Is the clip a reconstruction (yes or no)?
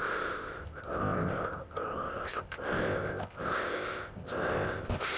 yes